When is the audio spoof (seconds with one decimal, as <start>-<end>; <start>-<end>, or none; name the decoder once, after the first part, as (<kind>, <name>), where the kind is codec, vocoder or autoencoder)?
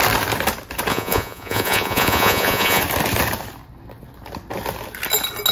0.9-2.8 (vocoder, Vocos)